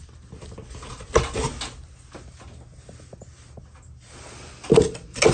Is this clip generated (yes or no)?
no